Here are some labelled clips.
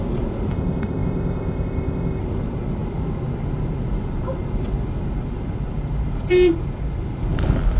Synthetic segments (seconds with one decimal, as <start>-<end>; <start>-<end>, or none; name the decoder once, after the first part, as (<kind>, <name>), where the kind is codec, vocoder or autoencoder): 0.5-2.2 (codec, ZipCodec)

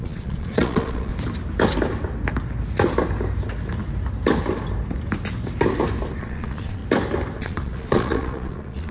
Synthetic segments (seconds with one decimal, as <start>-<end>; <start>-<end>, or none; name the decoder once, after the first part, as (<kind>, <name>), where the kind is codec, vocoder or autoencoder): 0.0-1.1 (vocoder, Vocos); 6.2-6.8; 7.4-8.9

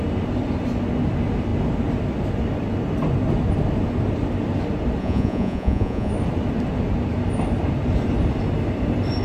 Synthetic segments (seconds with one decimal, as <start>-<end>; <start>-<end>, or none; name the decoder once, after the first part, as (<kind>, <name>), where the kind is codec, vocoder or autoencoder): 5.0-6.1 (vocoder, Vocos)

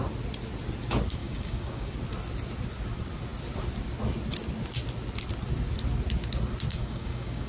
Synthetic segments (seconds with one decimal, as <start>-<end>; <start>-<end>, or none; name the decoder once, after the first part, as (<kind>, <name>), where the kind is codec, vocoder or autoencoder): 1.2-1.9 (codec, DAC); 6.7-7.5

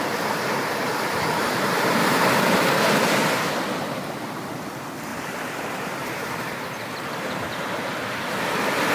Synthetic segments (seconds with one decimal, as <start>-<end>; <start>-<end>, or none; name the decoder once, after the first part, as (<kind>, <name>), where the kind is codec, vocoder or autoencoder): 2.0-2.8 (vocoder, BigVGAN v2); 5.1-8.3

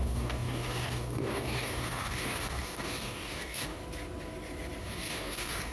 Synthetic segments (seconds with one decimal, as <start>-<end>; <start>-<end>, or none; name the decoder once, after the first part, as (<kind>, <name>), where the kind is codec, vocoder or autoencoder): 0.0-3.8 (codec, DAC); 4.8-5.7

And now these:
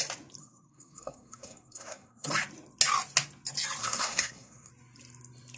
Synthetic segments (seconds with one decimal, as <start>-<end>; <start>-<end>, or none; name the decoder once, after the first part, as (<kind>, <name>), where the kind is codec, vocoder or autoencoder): 0.4-2.3 (codec, SNAC); 3.8-4.7

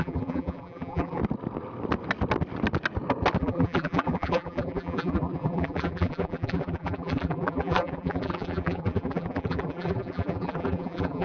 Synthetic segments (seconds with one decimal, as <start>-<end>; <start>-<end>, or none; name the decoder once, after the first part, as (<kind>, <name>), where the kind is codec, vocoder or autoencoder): 0.0-1.2 (vocoder, BigVGAN v2); 3.4-11.2